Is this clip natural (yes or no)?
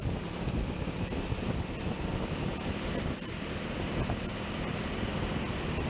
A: yes